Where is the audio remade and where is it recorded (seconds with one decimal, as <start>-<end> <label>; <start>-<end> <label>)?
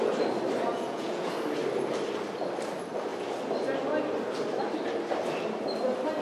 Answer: 0.0-0.7 recorded; 0.7-1.3 remade; 1.3-6.2 recorded